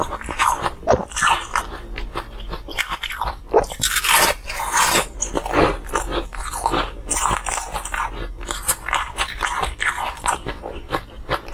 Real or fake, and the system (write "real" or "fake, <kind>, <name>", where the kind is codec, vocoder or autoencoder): real